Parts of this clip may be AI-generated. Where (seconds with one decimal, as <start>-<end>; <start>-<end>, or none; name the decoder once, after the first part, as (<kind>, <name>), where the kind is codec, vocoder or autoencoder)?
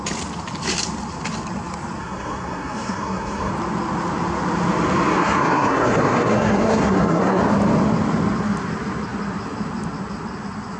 2.0-3.5 (codec, SNAC); 5.1-7.4